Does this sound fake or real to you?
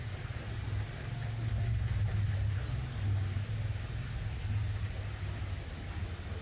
real